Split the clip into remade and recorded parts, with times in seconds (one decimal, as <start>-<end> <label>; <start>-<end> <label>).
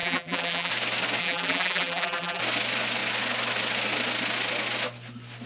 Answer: 0.0-0.7 remade; 0.7-1.2 recorded; 1.2-2.4 remade; 2.4-5.5 recorded